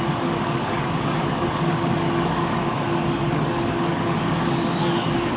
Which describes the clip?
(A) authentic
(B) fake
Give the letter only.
B